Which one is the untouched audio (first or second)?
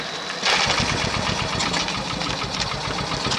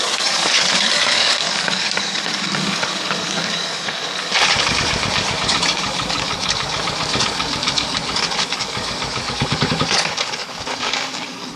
first